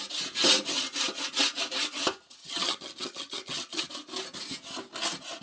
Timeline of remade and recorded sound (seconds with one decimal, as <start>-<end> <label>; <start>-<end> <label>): 0.0-2.4 recorded; 2.4-3.9 remade; 3.9-5.4 recorded